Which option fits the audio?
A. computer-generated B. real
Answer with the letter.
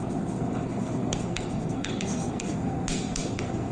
A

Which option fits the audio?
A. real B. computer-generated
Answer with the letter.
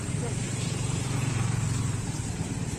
B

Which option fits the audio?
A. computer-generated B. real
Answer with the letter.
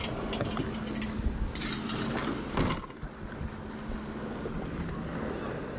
B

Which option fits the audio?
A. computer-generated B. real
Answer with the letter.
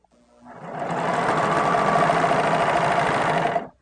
B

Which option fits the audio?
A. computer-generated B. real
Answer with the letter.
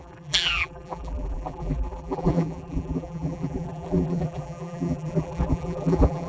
A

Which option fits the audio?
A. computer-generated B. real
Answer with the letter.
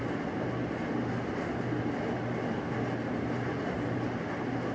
B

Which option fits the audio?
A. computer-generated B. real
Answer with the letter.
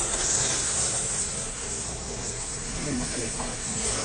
A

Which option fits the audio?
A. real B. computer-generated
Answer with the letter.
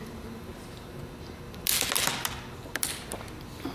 A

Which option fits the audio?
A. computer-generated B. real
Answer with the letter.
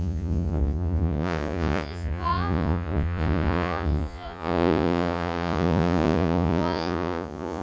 A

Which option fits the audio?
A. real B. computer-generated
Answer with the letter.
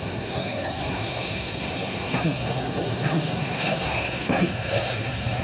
B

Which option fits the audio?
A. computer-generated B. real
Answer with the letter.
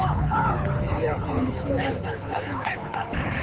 A